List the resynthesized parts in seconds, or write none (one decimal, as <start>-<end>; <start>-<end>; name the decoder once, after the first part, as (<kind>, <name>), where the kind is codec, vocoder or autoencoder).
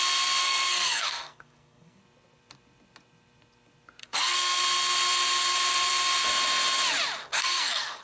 0.4-2.0 (codec, SNAC); 4.0-4.6; 7.3-8.0